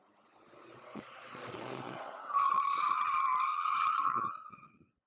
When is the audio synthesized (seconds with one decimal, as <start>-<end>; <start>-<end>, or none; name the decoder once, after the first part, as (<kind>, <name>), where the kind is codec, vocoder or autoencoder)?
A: 0.0-3.1 (vocoder, Vocos); 3.5-5.1

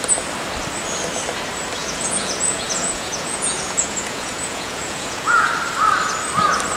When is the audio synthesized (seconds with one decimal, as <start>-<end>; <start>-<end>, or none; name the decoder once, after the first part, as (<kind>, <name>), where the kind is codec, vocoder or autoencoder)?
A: 1.8-5.5 (vocoder, Vocos)